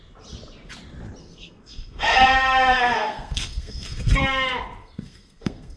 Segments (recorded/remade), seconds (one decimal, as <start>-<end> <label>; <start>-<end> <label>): 0.0-1.2 recorded; 1.2-4.2 remade; 4.2-4.8 recorded; 4.8-5.8 remade